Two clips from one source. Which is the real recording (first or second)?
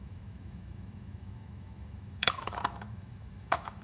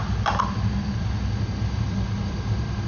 second